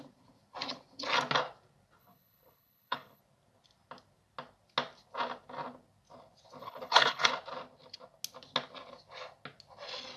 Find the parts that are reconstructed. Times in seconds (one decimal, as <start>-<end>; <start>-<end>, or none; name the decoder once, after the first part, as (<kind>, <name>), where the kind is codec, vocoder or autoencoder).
2.0-3.2 (codec, HILCodec); 6.6-7.3

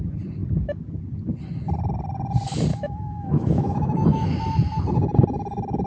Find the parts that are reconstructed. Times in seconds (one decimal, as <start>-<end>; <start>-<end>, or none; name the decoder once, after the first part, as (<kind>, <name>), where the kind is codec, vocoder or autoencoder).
2.7-4.3 (autoencoder, DAC-VAE)

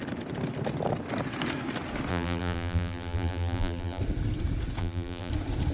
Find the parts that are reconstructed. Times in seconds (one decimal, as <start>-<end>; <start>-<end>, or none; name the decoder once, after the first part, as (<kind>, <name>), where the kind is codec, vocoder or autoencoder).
2.1-4.0 (vocoder, BigVGAN v2); 4.8-5.3

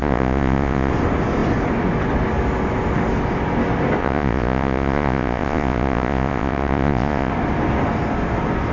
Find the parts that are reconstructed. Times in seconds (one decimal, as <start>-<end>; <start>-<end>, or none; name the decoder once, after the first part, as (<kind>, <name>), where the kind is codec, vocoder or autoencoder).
0.0-0.9 (vocoder, Vocos); 4.0-7.3

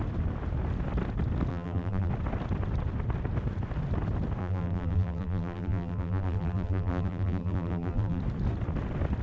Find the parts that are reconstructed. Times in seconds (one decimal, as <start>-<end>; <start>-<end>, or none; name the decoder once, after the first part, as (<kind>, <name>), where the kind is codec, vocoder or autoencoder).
1.5-2.1 (vocoder, BigVGAN v2); 4.4-8.2

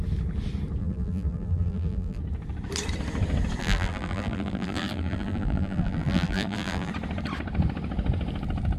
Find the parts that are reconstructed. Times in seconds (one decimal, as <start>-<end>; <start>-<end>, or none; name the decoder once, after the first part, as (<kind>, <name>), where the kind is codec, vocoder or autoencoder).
0.8-2.2 (vocoder, BigVGAN v2); 3.6-6.9